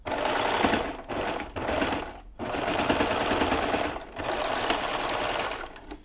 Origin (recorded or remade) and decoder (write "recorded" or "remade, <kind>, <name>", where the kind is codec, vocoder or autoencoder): recorded